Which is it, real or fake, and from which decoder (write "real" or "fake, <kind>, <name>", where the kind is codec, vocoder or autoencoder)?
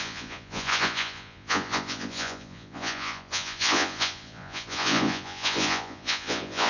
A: fake, vocoder, Vocos